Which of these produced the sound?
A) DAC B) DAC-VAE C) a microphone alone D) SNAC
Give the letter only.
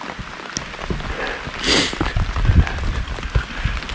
C